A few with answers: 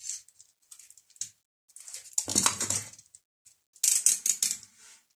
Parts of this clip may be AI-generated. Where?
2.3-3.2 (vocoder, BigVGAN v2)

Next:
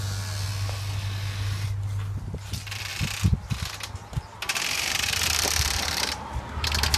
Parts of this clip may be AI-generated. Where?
4.5-6.4 (vocoder, BigVGAN v2)

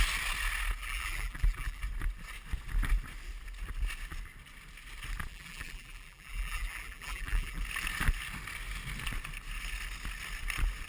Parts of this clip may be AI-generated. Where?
0.8-1.8 (vocoder, BigVGAN v2); 5.3-7.6

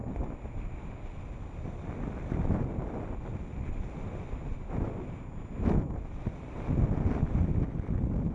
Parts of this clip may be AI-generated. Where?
none

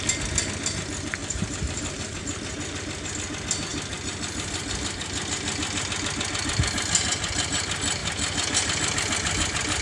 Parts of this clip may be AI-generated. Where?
1.2-2.2 (vocoder, BigVGAN v2)

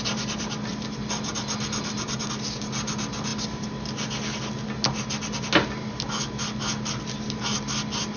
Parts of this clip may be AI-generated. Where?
none

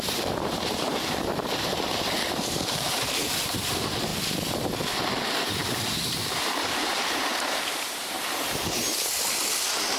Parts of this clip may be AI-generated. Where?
0.0-4.1 (vocoder, BigVGAN v2); 5.5-8.9

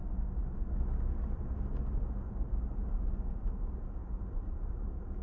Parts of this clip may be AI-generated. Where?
none